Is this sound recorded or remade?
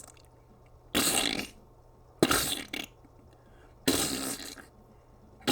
recorded